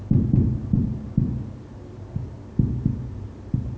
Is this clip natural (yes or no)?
yes